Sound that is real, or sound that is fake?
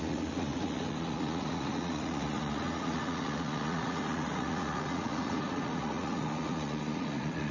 fake